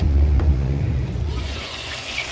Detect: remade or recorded remade